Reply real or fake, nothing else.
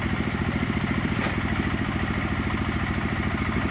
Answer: fake